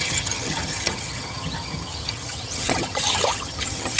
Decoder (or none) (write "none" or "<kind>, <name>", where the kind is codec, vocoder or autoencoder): vocoder, HiFi-GAN